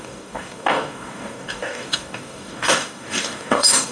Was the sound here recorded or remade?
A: remade